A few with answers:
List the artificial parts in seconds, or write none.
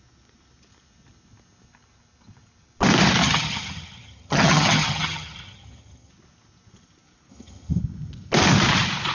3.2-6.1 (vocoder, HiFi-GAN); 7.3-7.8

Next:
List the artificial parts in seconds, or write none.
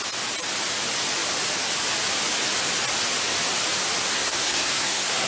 4.1-5.3 (codec, SNAC)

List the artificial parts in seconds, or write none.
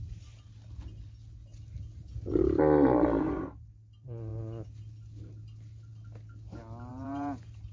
6.9-7.7 (vocoder, BigVGAN v2)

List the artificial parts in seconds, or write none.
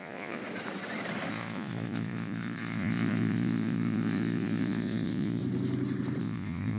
0.0-0.4 (vocoder, Vocos); 1.3-5.4; 6.2-6.8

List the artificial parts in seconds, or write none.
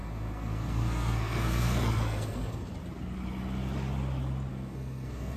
0.0-2.7 (codec, SNAC); 4.5-5.4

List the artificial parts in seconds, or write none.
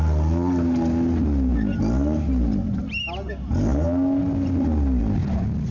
none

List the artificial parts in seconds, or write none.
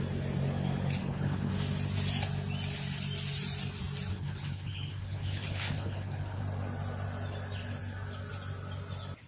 1.0-1.5 (codec, HILCodec); 4.1-6.4